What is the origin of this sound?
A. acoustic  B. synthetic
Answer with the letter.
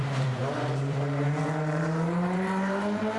B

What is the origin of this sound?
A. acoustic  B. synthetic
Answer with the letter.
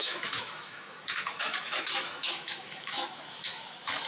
B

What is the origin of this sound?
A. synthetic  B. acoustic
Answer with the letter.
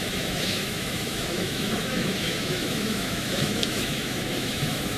A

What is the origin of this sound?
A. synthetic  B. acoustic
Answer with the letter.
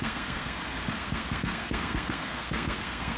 A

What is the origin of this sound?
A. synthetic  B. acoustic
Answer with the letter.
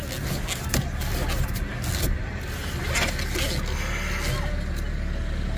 B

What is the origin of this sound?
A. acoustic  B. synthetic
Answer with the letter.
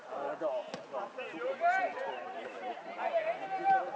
A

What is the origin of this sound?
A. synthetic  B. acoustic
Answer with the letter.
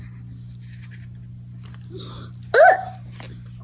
B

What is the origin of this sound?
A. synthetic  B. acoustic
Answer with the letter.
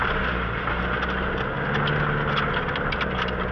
B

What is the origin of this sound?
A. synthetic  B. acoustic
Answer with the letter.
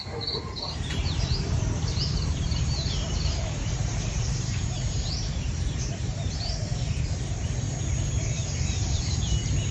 A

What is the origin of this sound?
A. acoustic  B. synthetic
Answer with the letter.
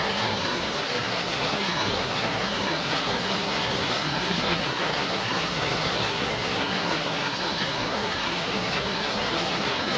B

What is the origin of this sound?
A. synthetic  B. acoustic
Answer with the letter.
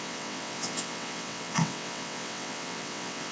A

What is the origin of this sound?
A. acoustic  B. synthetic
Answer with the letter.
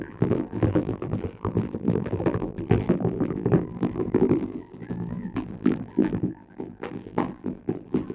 B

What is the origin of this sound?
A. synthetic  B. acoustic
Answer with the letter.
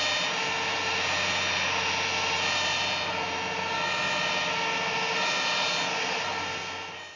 B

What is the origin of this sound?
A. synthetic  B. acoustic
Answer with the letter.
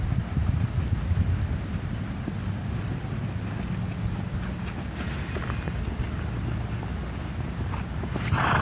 B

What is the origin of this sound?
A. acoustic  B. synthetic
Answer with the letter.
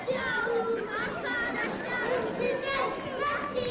A